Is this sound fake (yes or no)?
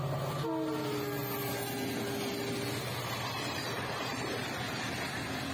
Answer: no